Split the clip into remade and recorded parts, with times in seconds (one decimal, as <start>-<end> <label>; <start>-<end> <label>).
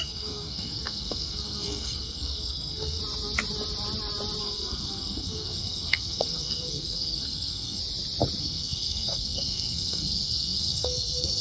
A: 0.0-3.0 remade; 3.0-4.4 recorded; 4.4-7.8 remade; 7.8-8.4 recorded; 8.4-11.4 remade